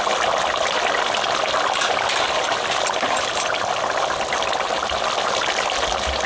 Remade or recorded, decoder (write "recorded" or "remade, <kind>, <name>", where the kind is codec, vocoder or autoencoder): recorded